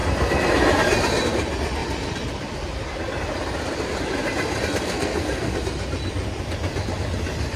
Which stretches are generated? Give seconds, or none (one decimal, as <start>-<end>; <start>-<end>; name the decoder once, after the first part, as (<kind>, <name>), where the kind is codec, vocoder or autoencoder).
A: 4.8-5.6 (codec, SNAC)